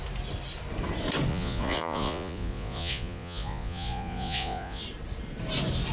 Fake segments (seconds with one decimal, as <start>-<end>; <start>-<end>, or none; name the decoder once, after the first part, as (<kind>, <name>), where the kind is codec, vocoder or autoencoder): 1.3-4.8 (vocoder, Vocos)